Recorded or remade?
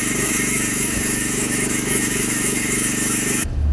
remade